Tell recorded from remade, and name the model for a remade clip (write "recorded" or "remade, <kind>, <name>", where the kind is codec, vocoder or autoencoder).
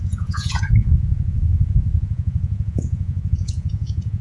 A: remade, vocoder, Vocos